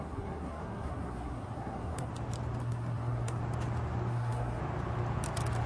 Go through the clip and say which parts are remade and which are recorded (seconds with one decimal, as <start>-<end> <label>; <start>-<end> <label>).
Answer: 0.0-2.1 remade; 2.1-2.6 recorded; 2.6-3.4 remade; 3.4-4.1 recorded; 4.1-4.6 remade; 4.6-5.7 recorded